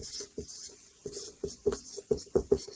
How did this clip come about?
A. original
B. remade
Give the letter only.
B